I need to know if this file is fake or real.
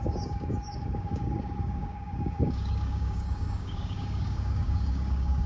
fake